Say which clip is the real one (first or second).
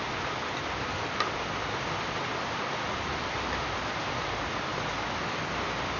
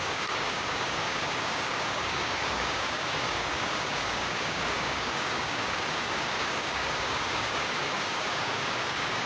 first